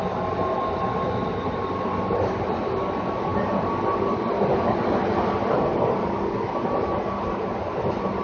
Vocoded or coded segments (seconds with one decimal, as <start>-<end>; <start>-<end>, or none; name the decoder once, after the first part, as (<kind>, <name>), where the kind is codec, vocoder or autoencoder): none